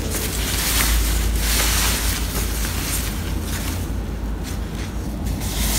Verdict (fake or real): real